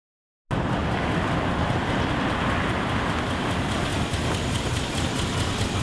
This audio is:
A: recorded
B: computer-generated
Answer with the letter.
A